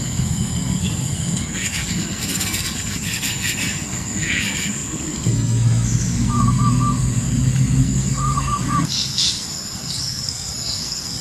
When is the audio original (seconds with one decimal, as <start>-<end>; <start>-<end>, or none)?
none